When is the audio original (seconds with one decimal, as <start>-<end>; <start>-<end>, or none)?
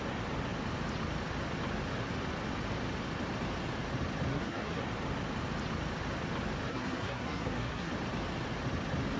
0.0-4.3; 4.8-6.7; 7.9-9.2